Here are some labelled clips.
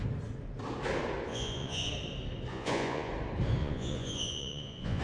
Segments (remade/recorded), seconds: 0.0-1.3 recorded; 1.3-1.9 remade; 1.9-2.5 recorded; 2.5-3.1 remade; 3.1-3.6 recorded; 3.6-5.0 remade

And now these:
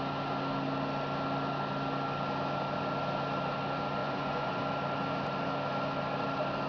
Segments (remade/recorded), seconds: 0.0-4.0 recorded; 4.0-4.6 remade; 4.6-6.7 recorded